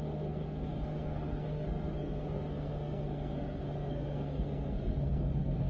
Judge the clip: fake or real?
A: fake